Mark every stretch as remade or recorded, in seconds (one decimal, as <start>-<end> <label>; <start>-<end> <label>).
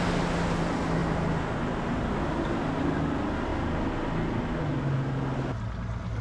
0.0-6.2 recorded